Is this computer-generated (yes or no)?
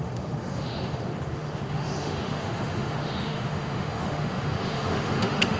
yes